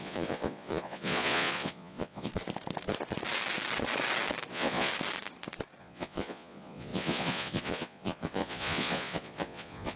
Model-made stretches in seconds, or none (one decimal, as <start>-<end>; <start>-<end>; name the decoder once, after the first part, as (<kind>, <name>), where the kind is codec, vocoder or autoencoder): 0.0-2.3 (vocoder, Vocos); 4.5-4.9; 5.8-10.0